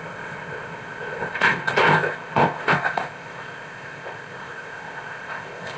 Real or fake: fake